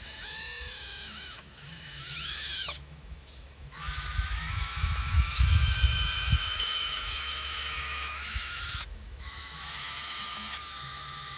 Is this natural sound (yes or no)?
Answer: no